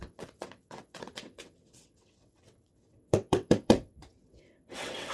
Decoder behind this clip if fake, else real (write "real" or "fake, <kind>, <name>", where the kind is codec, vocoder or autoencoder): fake, vocoder, WaveNeXt